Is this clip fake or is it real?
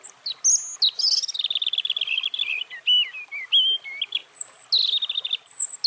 real